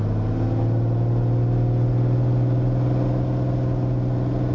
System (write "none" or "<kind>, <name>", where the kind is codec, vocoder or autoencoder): none